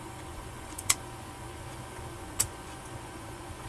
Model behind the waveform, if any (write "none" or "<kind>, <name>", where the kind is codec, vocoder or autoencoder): vocoder, Vocos